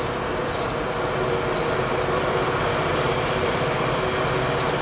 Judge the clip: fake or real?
real